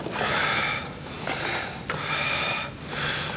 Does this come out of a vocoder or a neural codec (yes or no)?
no